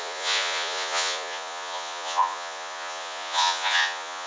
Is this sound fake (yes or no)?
yes